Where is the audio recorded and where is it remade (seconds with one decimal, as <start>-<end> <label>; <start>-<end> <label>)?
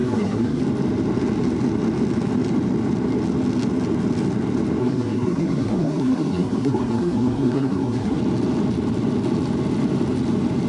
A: 0.0-0.6 remade; 0.6-4.8 recorded; 4.8-8.2 remade; 8.2-10.7 recorded